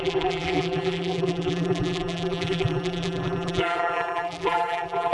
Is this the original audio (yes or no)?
no